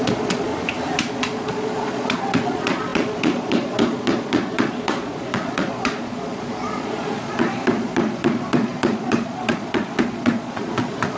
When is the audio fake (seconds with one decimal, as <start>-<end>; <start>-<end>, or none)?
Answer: 0.0-0.5; 1.1-11.2